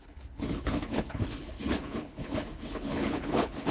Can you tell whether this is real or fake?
fake